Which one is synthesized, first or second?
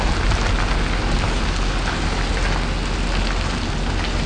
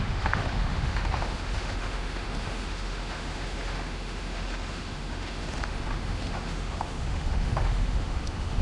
second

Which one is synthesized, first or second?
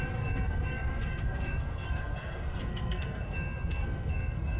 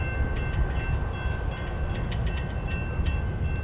first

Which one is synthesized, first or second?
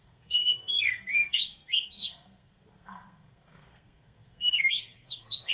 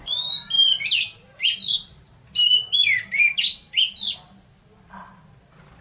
first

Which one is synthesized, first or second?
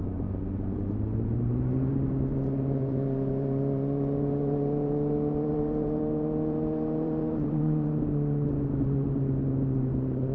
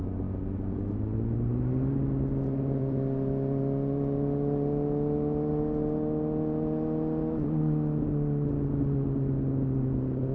first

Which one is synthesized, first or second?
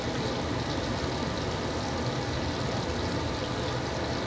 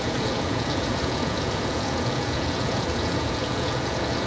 second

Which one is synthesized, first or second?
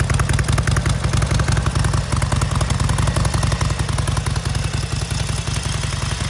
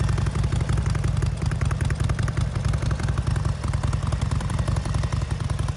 second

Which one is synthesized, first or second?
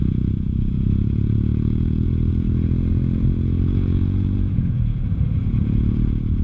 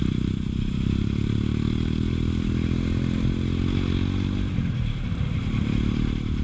first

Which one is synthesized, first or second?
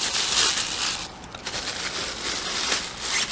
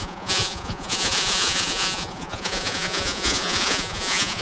second